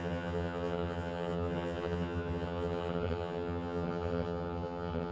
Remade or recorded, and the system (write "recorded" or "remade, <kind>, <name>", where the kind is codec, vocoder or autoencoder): remade, vocoder, HiFi-GAN